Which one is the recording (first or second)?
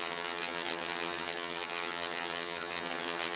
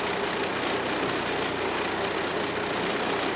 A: second